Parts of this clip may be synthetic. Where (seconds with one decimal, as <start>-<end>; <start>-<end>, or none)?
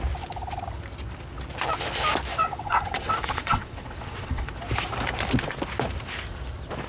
2.3-4.5